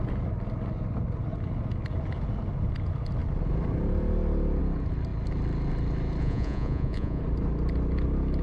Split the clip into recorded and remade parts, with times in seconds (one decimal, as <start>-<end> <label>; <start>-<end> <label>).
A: 0.0-6.2 recorded; 6.2-7.2 remade; 7.2-8.4 recorded